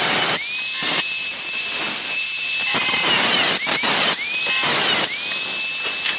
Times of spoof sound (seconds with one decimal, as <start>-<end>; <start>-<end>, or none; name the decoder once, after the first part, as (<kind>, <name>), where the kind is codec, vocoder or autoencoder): 0.9-4.4 (vocoder, BigVGAN v2)